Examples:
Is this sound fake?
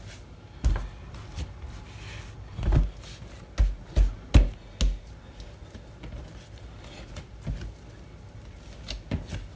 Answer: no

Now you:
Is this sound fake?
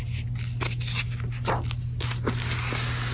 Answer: no